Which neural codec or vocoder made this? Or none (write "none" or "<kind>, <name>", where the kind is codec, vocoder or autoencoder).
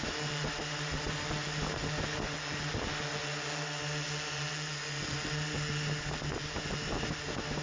none